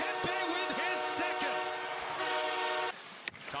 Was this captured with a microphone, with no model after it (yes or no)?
yes